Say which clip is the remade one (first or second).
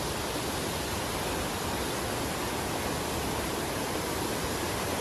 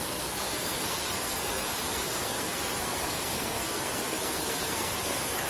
second